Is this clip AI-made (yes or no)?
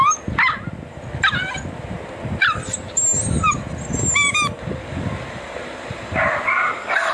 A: no